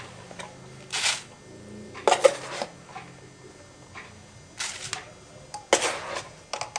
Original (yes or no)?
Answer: yes